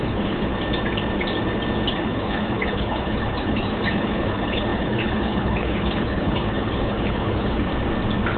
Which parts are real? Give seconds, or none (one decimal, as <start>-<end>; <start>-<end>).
0.5-1.9; 7.7-8.4